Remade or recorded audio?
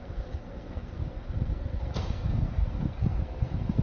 remade